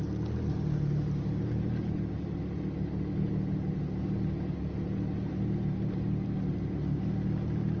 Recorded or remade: recorded